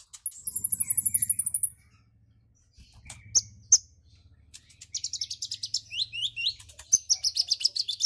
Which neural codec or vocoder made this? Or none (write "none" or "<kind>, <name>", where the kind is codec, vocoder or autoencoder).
none